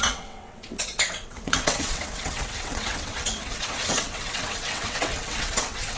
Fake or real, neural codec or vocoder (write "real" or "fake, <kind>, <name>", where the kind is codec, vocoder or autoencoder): fake, vocoder, WaveNeXt